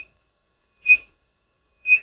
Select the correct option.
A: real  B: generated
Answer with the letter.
B